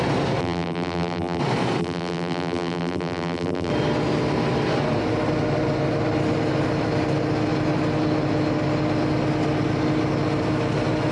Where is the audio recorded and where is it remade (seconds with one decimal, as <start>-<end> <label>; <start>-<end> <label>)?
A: 0.0-0.4 recorded; 0.4-1.4 remade; 1.4-1.8 recorded; 1.8-3.7 remade; 3.7-11.1 recorded